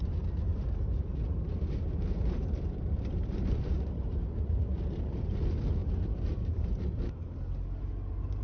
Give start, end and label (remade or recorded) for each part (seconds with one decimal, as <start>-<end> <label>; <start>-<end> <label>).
0.0-0.5 recorded; 0.5-5.3 remade; 5.3-5.8 recorded; 5.8-6.8 remade; 6.8-8.4 recorded